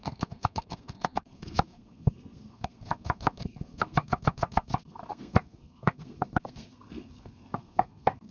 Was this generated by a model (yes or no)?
yes